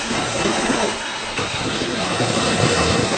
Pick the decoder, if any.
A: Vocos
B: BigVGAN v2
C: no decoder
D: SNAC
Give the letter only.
D